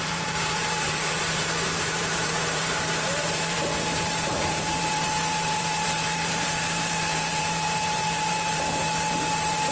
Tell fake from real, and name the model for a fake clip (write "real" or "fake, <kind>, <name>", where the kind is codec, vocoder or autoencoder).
fake, vocoder, BigVGAN v2